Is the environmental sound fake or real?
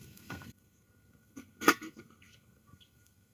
fake